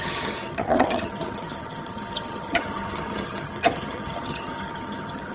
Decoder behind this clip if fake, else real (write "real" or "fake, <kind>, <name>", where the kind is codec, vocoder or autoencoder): fake, vocoder, HiFi-GAN